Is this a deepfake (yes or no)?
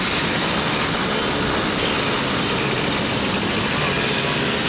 no